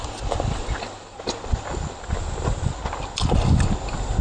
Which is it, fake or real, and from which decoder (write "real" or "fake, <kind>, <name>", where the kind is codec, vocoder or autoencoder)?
real